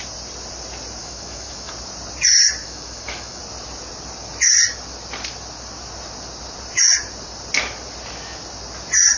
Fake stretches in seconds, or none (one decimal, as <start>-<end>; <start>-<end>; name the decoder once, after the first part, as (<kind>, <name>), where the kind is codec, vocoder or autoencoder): 1.0-1.7 (autoencoder, DAC-VAE); 2.6-3.4